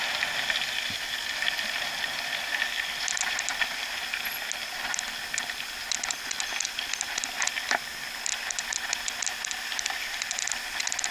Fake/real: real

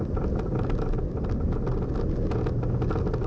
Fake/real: real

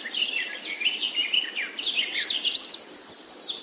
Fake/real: real